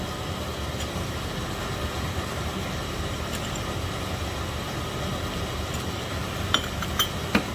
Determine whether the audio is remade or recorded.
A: recorded